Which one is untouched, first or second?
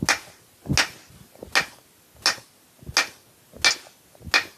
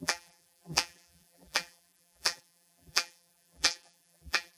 first